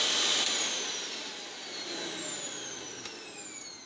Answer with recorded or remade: recorded